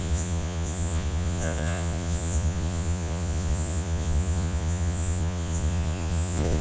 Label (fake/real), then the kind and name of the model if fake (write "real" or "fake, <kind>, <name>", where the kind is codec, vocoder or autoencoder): fake, vocoder, Vocos